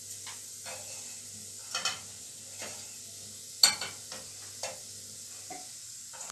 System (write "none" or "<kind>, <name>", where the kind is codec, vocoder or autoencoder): none